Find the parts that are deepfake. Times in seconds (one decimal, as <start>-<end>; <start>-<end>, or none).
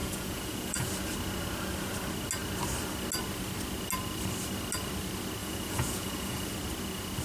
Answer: 0.0-0.9; 5.4-6.5